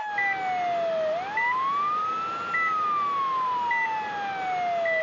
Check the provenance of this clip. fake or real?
real